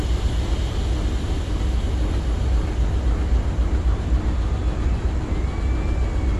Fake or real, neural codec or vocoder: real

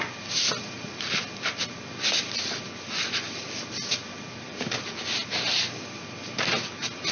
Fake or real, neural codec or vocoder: real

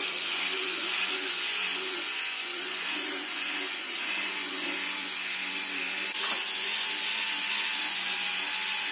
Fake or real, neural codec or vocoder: fake, vocoder, Vocos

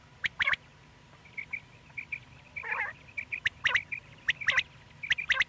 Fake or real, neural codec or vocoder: real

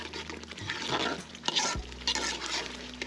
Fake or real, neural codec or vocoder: real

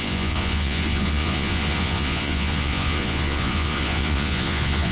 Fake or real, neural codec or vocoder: fake, vocoder, Vocos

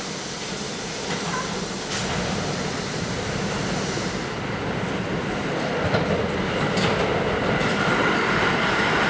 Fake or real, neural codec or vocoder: real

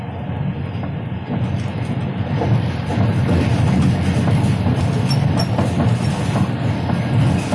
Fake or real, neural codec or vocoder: real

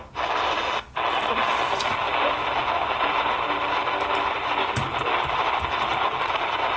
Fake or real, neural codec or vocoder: real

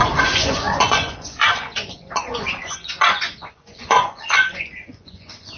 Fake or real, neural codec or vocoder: fake, vocoder, Vocos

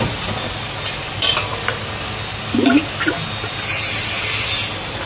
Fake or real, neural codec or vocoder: real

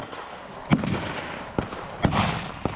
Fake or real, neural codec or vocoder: real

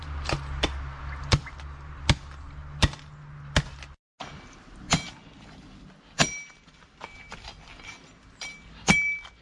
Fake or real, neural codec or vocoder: real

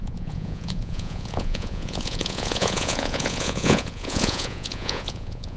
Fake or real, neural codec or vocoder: fake, vocoder, Vocos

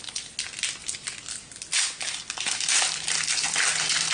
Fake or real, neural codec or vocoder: real